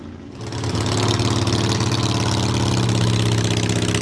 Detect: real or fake real